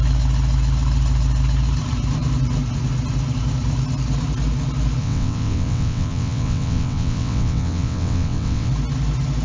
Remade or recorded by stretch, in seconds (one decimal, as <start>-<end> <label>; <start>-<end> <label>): 0.0-5.0 recorded; 5.0-8.7 remade; 8.7-9.4 recorded